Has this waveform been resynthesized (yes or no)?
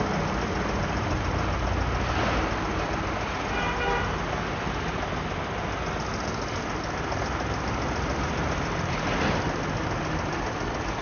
no